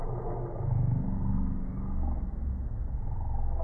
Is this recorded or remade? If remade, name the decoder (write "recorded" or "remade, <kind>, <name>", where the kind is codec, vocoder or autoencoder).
recorded